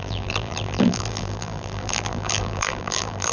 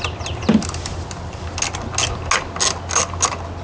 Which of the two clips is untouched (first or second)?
second